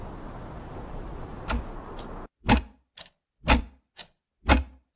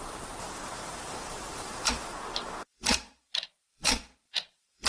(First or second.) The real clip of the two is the first